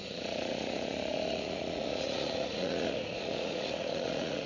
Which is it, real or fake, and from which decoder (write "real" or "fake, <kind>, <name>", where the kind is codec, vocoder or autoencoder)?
fake, vocoder, Vocos